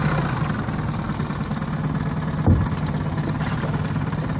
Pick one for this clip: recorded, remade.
recorded